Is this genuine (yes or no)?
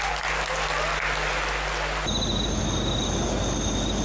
yes